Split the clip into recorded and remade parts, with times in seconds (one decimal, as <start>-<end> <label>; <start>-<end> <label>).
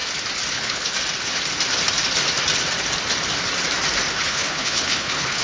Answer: 0.0-0.5 recorded; 0.5-0.9 remade; 0.9-4.1 recorded; 4.1-5.4 remade